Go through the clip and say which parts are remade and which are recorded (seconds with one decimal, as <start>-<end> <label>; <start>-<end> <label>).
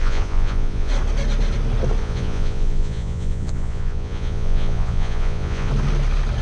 0.0-0.9 remade; 0.9-2.0 recorded; 2.0-5.7 remade; 5.7-6.4 recorded